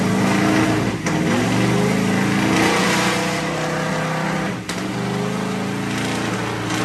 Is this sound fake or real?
real